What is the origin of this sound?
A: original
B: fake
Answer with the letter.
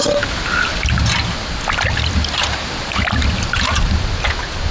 A